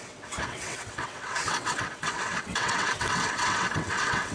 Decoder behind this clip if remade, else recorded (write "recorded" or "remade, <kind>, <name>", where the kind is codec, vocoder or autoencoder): remade, vocoder, WaveNeXt